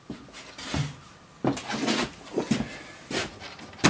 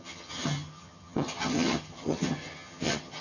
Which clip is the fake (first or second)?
second